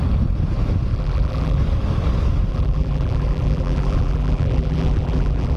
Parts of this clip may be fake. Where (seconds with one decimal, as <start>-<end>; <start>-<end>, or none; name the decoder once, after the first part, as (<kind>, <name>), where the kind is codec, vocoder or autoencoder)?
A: 0.9-1.6 (vocoder, BigVGAN v2); 2.5-5.6